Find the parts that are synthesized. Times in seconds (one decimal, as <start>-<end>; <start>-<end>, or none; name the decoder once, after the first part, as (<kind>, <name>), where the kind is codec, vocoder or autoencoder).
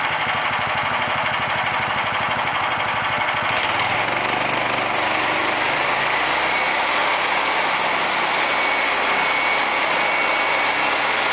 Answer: none